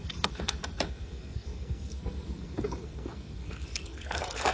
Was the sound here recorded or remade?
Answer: remade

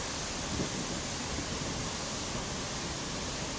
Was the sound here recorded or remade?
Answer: recorded